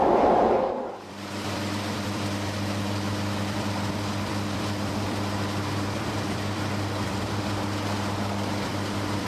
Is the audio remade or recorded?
remade